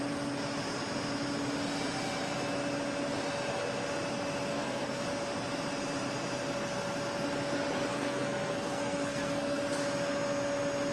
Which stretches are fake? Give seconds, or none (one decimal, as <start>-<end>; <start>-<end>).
4.5-5.0; 7.9-9.6